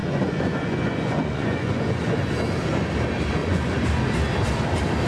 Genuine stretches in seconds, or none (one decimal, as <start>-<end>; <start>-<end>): 2.3-3.4; 4.1-5.1